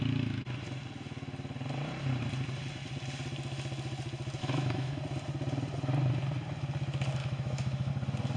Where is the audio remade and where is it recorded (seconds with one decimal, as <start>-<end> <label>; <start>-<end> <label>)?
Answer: 0.0-4.4 recorded; 4.4-5.0 remade; 5.0-7.2 recorded; 7.2-7.9 remade; 7.9-8.4 recorded